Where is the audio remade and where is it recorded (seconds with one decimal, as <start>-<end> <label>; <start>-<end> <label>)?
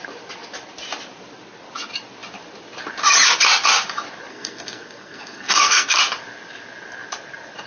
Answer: 0.0-4.3 recorded; 4.3-6.0 remade; 6.0-7.7 recorded